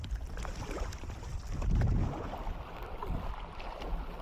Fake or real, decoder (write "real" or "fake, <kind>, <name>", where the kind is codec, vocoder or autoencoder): real